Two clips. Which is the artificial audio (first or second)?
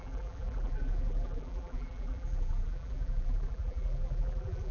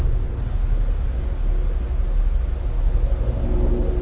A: first